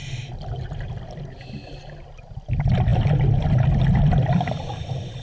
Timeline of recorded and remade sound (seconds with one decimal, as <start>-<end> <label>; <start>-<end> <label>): 0.0-1.2 remade; 1.2-2.9 recorded; 2.9-5.2 remade